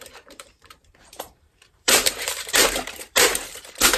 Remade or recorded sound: remade